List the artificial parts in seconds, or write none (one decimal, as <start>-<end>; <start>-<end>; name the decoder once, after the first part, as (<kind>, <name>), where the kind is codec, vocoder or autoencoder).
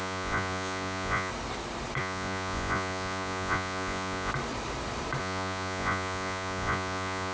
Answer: 0.0-1.3 (vocoder, Vocos); 2.0-4.3; 5.2-7.3